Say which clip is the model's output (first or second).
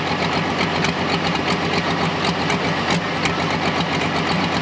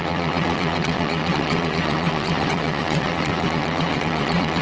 second